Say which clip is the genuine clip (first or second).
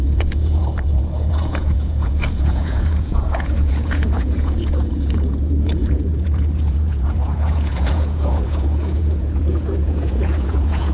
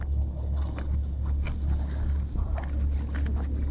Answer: second